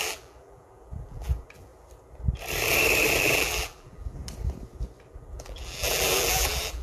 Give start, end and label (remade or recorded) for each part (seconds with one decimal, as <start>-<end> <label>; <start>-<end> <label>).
0.0-1.7 remade; 1.7-3.2 recorded; 3.2-4.2 remade; 4.2-5.1 recorded; 5.1-6.8 remade